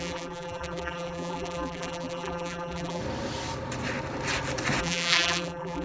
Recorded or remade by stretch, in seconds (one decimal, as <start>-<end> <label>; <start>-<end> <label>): 0.0-3.0 remade; 3.0-4.8 recorded; 4.8-5.8 remade